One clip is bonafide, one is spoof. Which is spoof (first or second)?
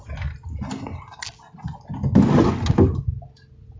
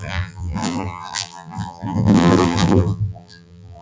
second